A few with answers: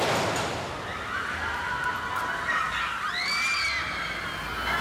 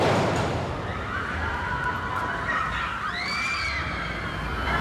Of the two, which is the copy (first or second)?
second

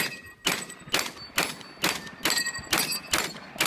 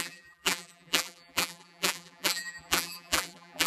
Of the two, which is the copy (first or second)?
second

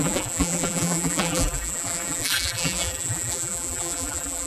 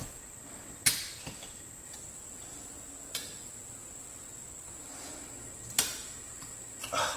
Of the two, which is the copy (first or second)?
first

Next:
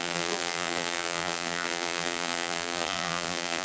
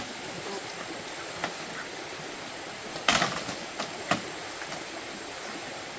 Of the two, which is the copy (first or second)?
first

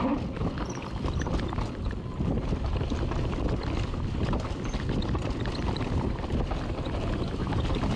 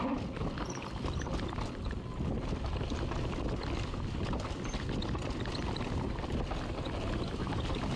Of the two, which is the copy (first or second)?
first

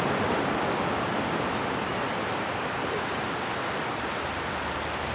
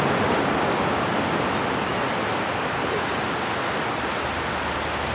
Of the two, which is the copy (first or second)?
first